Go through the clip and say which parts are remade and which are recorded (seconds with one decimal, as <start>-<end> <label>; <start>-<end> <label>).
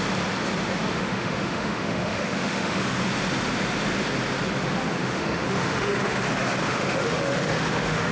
0.0-0.9 recorded; 0.9-2.8 remade; 2.8-5.0 recorded; 5.0-6.2 remade; 6.2-6.7 recorded; 6.7-8.1 remade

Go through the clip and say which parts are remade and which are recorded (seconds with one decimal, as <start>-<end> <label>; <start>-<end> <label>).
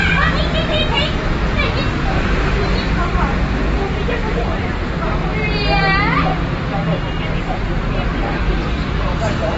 0.0-6.9 recorded; 6.9-9.0 remade; 9.0-9.6 recorded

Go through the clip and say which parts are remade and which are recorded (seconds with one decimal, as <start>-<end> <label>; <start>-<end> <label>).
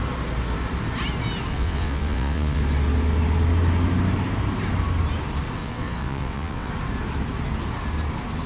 0.0-1.5 recorded; 1.5-2.6 remade; 2.6-5.6 recorded; 5.6-6.7 remade; 6.7-8.5 recorded